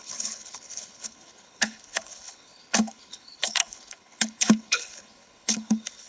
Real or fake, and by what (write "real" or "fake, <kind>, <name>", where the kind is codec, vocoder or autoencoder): fake, codec, HILCodec